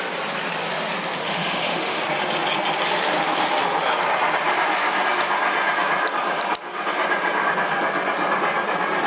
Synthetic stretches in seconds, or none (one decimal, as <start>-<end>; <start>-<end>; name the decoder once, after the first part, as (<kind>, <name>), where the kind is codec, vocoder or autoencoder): 1.2-2.0 (autoencoder, DAC-VAE)